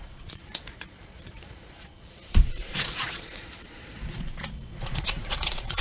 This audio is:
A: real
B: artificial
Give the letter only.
B